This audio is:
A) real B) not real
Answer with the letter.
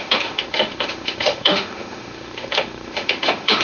B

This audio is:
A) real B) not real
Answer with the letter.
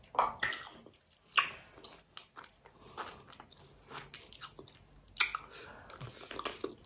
A